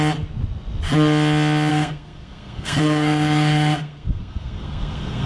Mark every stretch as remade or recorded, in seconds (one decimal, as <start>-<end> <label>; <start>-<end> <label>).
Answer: 0.0-1.7 recorded; 1.7-5.3 remade